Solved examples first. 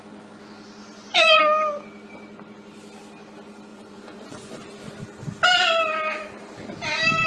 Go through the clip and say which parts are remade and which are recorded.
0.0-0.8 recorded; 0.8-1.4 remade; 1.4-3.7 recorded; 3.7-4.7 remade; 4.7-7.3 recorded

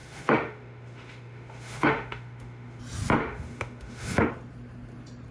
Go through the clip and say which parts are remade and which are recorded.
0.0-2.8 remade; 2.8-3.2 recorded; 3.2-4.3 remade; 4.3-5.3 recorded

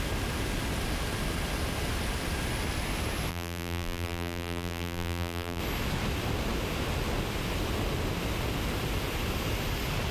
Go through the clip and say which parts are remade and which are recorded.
0.0-3.3 recorded; 3.3-5.6 remade; 5.6-10.1 recorded

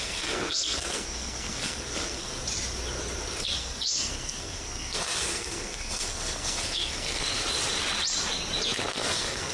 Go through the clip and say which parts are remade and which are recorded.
0.0-2.3 remade; 2.3-3.4 recorded; 3.4-7.4 remade; 7.4-8.9 recorded; 8.9-9.5 remade

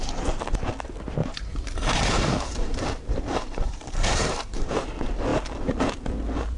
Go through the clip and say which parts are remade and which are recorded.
0.0-1.2 recorded; 1.2-4.7 remade; 4.7-6.6 recorded